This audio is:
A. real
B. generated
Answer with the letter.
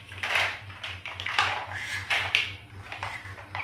B